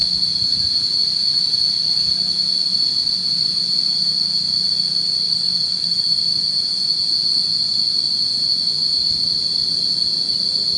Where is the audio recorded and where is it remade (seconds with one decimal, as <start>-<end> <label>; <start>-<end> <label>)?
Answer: 0.0-6.3 recorded; 6.3-9.0 remade; 9.0-10.8 recorded